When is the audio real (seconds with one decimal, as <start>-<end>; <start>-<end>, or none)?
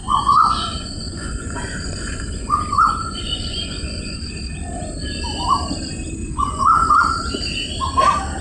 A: 4.3-6.2; 7.0-8.4